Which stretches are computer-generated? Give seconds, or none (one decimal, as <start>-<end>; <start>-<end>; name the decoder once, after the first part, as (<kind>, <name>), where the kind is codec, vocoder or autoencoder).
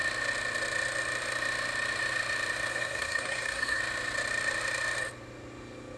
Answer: 2.7-3.8 (codec, SNAC)